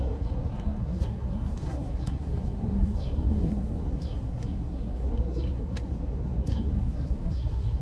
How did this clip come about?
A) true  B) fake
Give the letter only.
B